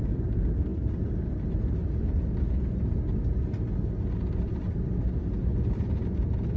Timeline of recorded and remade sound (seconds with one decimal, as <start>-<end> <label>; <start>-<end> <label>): 0.0-6.6 recorded